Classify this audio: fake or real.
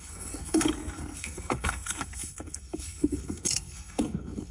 fake